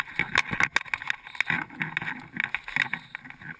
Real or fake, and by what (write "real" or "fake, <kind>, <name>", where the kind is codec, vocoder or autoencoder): real